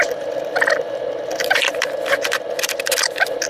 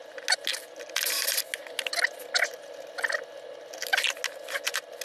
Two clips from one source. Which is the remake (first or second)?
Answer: first